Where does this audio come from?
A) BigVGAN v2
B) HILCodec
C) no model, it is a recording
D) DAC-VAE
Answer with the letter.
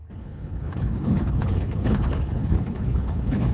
B